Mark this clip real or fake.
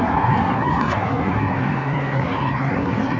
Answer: fake